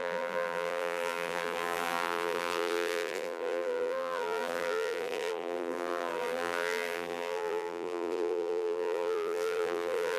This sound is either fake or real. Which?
fake